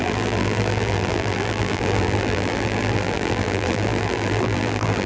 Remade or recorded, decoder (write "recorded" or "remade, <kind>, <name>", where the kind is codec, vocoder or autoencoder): remade, vocoder, BigVGAN v2